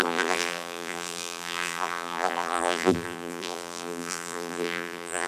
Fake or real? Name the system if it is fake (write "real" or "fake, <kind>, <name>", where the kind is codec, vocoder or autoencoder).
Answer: fake, vocoder, BigVGAN v2